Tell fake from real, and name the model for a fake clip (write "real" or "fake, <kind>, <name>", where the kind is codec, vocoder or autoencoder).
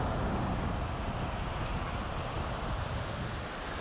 real